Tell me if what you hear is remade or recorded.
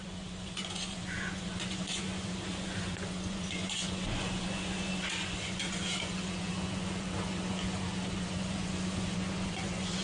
remade